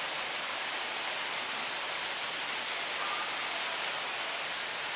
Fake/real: real